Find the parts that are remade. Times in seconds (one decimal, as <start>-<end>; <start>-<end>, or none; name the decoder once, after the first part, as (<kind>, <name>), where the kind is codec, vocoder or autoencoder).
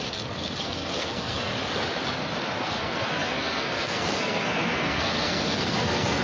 0.0-1.5 (codec, SNAC); 2.6-6.2